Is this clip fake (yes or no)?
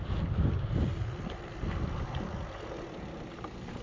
no